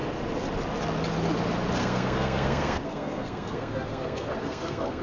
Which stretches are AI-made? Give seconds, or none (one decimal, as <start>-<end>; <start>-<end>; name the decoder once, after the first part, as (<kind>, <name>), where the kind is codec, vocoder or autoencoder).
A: 1.8-5.0 (codec, SNAC)